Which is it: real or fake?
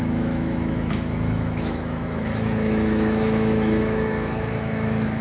fake